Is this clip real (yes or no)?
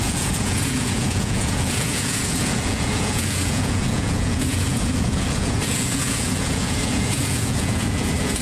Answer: no